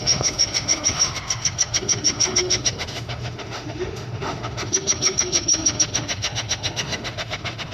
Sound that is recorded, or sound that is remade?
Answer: remade